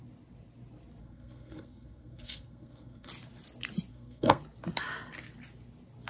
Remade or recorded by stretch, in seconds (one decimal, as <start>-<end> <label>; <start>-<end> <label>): 0.0-1.0 recorded; 1.0-3.1 remade; 3.1-3.9 recorded; 3.9-4.4 remade; 4.4-6.1 recorded